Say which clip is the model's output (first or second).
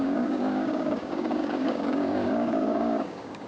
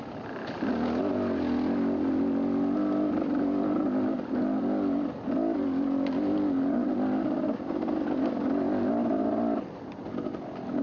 first